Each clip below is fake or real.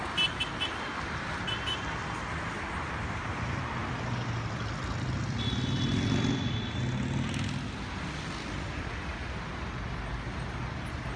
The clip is real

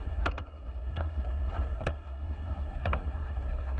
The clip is fake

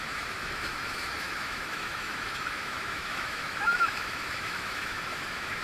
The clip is fake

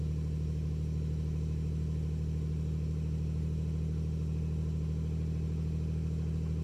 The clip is real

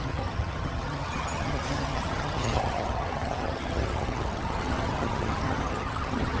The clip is fake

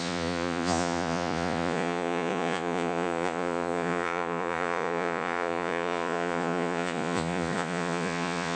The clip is fake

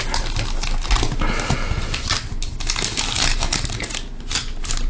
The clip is real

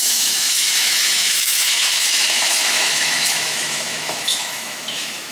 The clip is fake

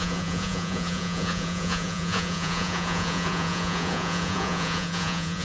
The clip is fake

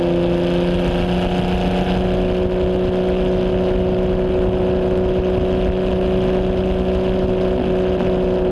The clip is real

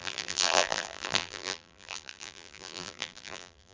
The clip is fake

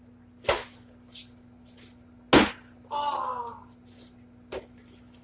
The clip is real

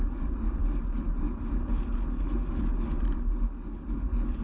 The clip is real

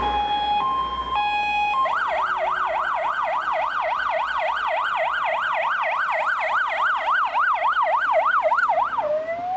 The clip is real